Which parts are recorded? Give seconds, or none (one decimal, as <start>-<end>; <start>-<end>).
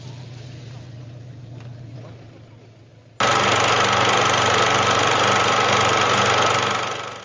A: 0.0-7.2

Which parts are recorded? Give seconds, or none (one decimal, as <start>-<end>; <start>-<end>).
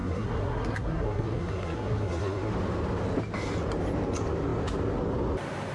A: 2.5-5.7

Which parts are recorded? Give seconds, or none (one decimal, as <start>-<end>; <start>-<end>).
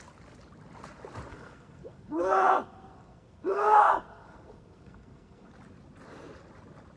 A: 0.0-1.3; 5.5-7.0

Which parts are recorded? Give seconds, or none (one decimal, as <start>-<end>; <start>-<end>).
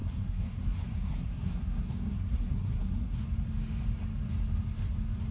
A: 3.2-5.3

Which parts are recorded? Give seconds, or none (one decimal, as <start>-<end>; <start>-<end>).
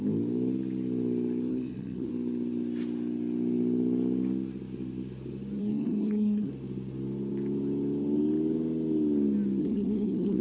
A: 0.0-1.5; 2.1-5.6; 6.5-9.6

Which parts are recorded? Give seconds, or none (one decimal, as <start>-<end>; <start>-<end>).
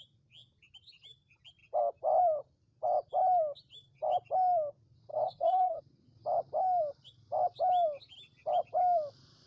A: 0.0-5.1; 5.8-9.5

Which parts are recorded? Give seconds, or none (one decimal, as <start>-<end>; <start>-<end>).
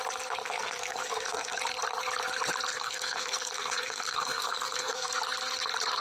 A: 0.0-0.4; 1.6-2.7; 5.1-6.0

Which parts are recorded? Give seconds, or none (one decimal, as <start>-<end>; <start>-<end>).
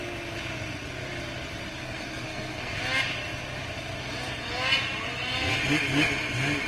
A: 0.0-1.8; 2.8-6.7